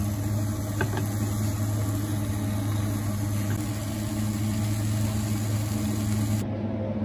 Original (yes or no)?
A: yes